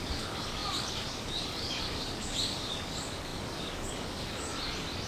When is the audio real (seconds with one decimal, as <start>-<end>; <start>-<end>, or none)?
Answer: 4.5-5.1